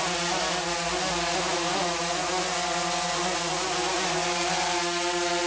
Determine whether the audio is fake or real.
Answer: real